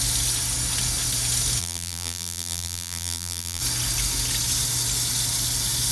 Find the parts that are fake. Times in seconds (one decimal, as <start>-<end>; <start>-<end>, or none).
1.6-3.6